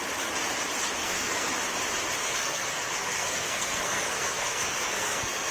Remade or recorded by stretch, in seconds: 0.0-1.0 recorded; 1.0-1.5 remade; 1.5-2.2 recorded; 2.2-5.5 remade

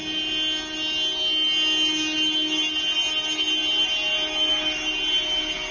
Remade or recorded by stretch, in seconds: 0.0-5.7 recorded

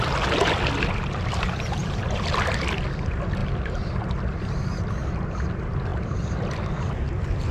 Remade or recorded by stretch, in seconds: 0.0-1.8 recorded; 1.8-2.3 remade; 2.3-7.5 recorded

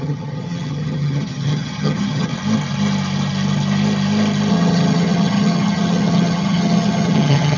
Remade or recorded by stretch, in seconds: 0.0-2.3 remade; 2.3-4.5 recorded; 4.5-7.6 remade

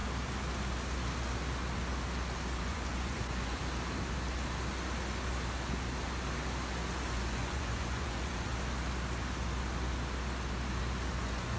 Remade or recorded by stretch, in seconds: 0.0-2.6 recorded; 2.6-3.6 remade; 3.6-7.1 recorded; 7.1-8.5 remade; 8.5-11.2 recorded; 11.2-11.6 remade

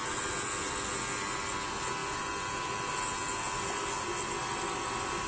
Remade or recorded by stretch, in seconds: 0.0-5.3 recorded

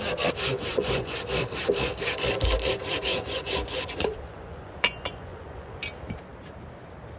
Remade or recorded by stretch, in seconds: 0.0-0.5 recorded; 0.5-1.2 remade; 1.2-3.1 recorded; 3.1-5.8 remade; 5.8-7.2 recorded